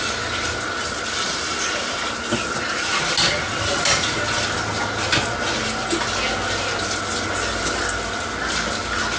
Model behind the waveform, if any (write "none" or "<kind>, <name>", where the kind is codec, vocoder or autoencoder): none